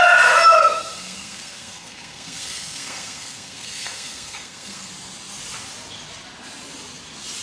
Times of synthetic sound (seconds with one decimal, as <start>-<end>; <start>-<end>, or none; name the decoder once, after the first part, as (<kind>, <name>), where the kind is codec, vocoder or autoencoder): 0.5-4.9 (codec, SNAC)